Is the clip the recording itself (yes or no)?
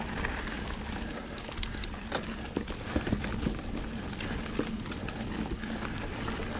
yes